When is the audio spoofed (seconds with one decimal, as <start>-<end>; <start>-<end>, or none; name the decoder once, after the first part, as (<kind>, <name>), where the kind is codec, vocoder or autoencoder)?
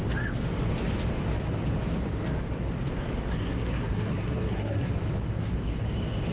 3.3-4.9 (codec, SNAC)